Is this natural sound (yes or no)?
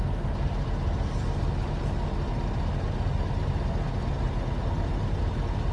yes